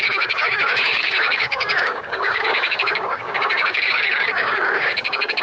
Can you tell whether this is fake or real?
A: fake